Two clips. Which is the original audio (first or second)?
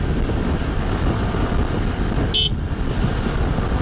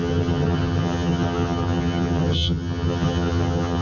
first